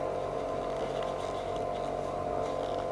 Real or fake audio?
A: real